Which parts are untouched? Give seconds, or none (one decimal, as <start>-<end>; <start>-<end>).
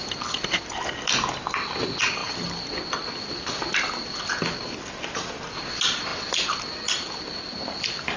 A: 0.0-8.2